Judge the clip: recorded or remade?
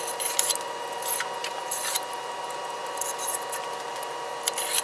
recorded